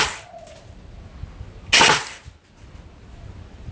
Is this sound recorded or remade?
recorded